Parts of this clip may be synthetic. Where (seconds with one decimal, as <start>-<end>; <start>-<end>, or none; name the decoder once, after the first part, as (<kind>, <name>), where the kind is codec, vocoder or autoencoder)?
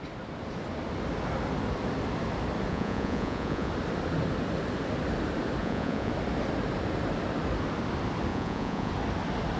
2.7-3.7 (vocoder, Vocos); 5.6-6.1; 8.3-8.9